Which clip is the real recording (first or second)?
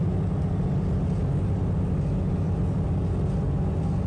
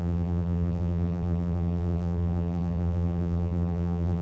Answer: first